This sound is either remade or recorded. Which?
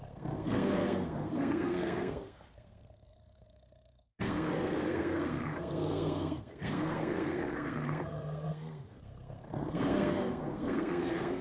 remade